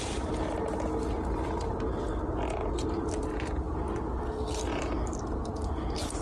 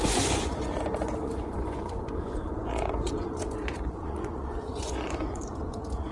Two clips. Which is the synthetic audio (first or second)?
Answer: second